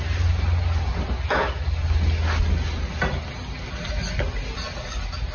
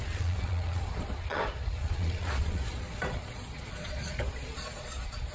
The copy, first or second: second